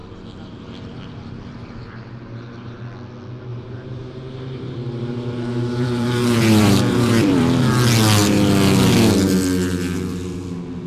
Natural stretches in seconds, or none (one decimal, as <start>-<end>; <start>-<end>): 2.8-3.5; 7.4-10.9